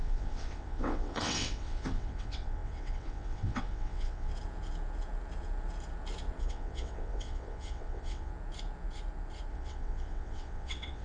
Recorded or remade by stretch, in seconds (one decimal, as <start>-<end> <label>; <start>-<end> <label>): 0.0-4.3 remade; 4.3-6.4 recorded; 6.4-8.3 remade; 8.3-9.5 recorded; 9.5-11.0 remade

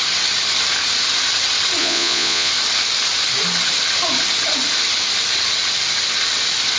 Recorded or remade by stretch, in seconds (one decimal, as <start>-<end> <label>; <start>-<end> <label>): 0.0-1.8 recorded; 1.8-2.5 remade; 2.5-6.8 recorded